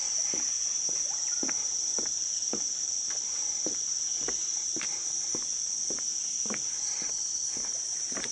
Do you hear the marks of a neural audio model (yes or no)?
no